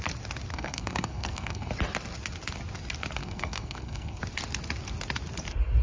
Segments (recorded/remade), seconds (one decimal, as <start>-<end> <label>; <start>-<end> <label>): 0.0-0.5 recorded; 0.5-1.7 remade; 1.7-3.2 recorded; 3.2-4.2 remade; 4.2-5.8 recorded